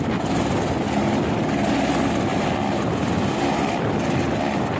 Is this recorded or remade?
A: recorded